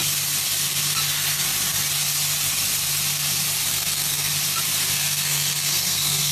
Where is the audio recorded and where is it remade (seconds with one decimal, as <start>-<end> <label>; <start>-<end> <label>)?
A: 0.0-3.7 recorded; 3.7-4.3 remade; 4.3-4.9 recorded; 4.9-6.3 remade